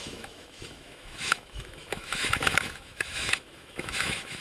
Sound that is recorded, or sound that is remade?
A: remade